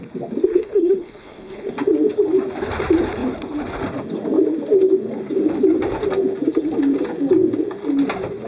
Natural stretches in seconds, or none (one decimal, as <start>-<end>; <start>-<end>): 0.0-0.5; 1.7-8.5